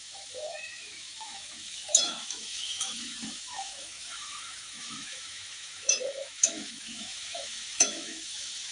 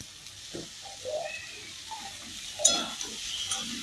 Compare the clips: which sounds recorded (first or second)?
second